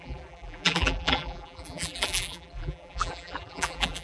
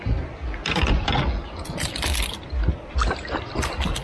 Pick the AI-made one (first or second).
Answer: first